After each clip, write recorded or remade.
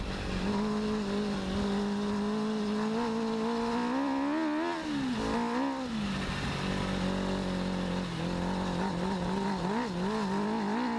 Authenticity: recorded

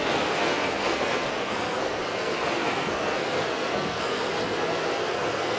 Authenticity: remade